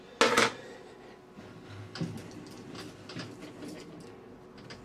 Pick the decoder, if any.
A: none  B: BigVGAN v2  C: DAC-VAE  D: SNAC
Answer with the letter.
A